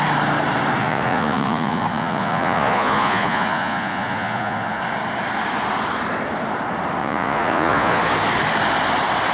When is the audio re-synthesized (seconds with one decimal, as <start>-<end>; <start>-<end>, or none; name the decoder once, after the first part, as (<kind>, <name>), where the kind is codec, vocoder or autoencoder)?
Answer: 0.8-4.8 (vocoder, Vocos); 7.0-8.0

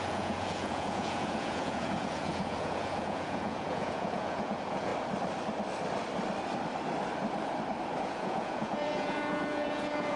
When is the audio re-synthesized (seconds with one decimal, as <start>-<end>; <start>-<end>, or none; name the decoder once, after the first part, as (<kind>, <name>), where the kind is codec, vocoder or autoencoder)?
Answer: 0.0-4.9 (vocoder, Vocos); 8.0-10.2